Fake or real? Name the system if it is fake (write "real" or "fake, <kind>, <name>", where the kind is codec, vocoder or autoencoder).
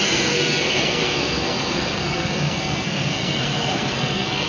fake, codec, SNAC